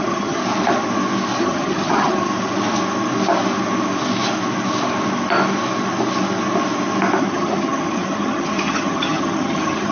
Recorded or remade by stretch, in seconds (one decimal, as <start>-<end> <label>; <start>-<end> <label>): 0.0-0.4 remade; 0.4-1.4 recorded; 1.4-2.3 remade; 2.3-7.2 recorded; 7.2-9.9 remade